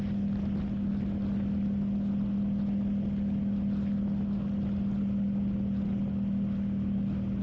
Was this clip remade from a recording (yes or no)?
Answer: no